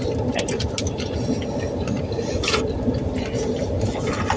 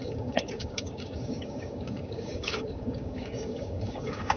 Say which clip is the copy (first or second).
second